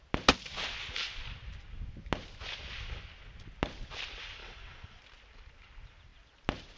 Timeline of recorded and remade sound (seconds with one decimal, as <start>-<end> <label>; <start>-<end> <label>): 0.0-4.4 recorded; 4.4-5.0 remade; 5.0-6.8 recorded

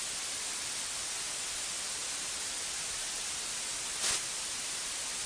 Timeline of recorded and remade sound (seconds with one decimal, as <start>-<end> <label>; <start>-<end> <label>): 0.0-5.3 recorded

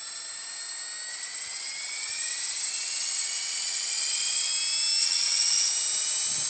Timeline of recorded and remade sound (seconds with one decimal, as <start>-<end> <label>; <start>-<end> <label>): 0.0-1.1 recorded; 1.1-4.5 remade; 4.5-5.0 recorded; 5.0-5.7 remade; 5.7-6.5 recorded

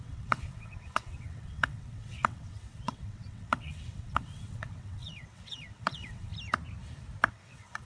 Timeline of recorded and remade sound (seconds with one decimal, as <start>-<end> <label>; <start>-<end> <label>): 0.0-6.3 remade; 6.3-7.3 recorded; 7.3-7.8 remade

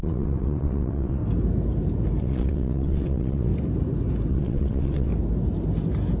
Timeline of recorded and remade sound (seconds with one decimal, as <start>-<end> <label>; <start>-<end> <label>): 0.0-1.2 remade; 1.2-2.2 recorded; 2.2-3.5 remade; 3.5-4.3 recorded; 4.3-5.1 remade; 5.1-6.2 recorded